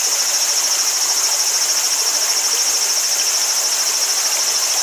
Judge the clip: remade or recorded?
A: recorded